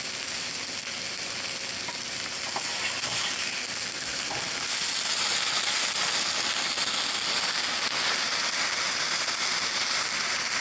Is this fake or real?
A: real